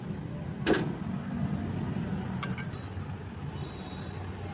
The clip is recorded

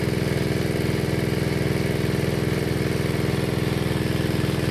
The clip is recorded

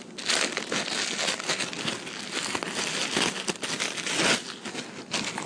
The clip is recorded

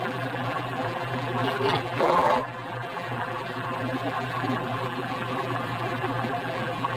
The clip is remade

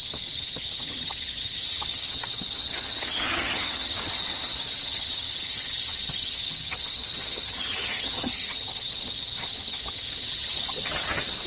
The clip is remade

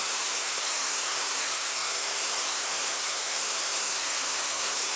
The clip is remade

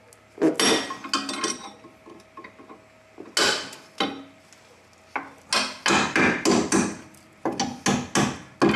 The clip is recorded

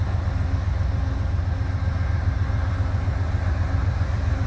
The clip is recorded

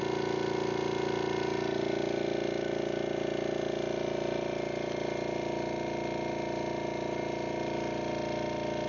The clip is recorded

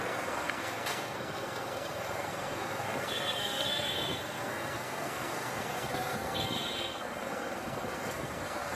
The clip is remade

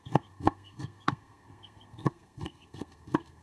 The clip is remade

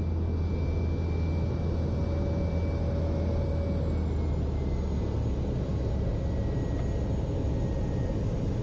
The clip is recorded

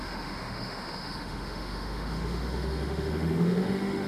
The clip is remade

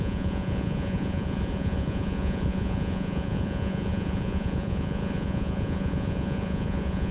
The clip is remade